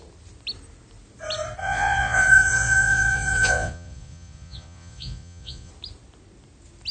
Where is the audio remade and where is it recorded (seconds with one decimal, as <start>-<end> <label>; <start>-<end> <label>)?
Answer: 0.0-1.6 recorded; 1.6-5.7 remade; 5.7-6.9 recorded